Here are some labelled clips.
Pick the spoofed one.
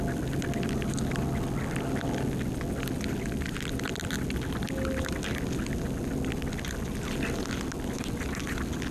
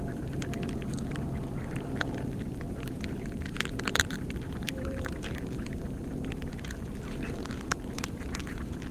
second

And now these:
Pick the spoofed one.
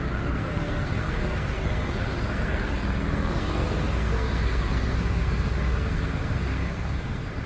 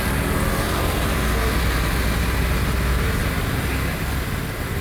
first